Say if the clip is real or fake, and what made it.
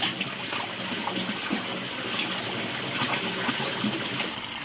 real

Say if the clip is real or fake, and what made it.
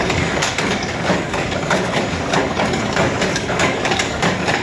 fake, codec, DAC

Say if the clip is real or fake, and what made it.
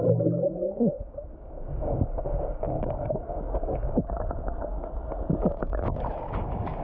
fake, codec, DAC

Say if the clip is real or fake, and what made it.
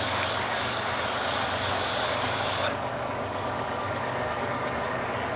fake, codec, DAC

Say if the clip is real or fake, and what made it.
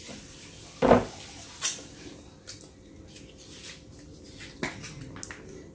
real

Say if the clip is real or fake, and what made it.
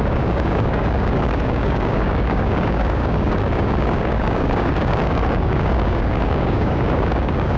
fake, codec, DAC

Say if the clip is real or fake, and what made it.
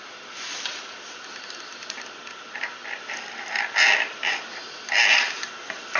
real